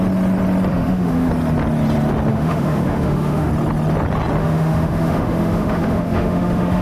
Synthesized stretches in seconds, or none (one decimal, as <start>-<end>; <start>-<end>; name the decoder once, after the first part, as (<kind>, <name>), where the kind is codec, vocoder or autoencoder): 0.7-1.3 (autoencoder, DAC-VAE); 2.3-3.5; 4.4-6.8